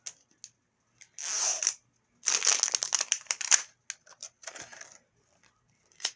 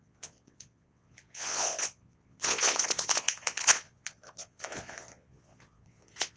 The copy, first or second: second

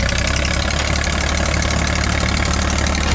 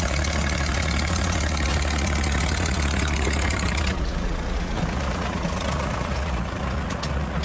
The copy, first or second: second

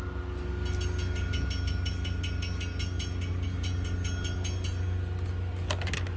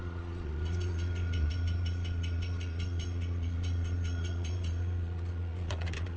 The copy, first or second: second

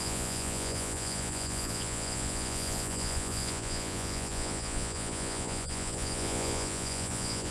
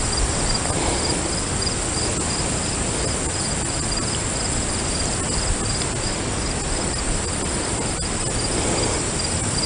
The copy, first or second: first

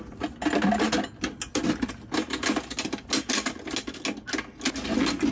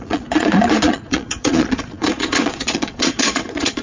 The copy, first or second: second